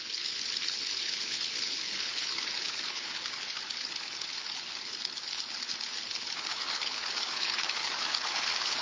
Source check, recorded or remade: remade